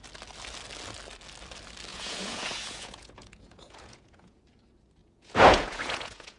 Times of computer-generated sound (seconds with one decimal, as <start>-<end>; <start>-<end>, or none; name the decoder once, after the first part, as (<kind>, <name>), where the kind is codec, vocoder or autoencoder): 1.9-4.4 (vocoder, Vocos); 5.0-6.4

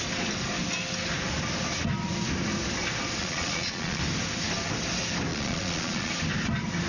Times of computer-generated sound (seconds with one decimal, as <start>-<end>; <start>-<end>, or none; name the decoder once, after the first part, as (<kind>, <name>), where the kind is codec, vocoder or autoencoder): 3.2-4.0 (vocoder, Vocos); 5.3-6.1